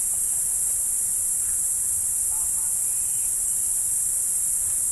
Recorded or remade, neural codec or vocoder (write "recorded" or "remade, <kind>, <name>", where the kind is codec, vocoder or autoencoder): remade, vocoder, BigVGAN v2